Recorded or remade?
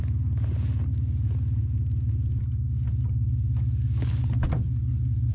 recorded